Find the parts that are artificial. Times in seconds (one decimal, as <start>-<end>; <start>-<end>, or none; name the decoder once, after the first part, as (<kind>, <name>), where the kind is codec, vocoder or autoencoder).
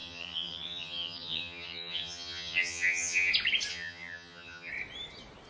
0.0-3.3 (vocoder, HiFi-GAN); 3.7-4.7